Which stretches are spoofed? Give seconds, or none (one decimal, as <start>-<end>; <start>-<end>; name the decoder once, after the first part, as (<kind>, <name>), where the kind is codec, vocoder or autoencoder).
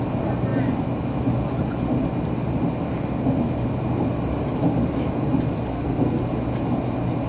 5.7-6.2 (codec, SNAC)